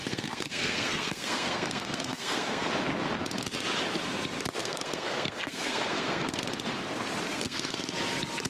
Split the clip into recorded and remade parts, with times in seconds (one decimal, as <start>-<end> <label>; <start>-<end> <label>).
0.0-2.7 remade; 2.7-4.6 recorded; 4.6-6.4 remade; 6.4-7.3 recorded; 7.3-7.8 remade; 7.8-8.5 recorded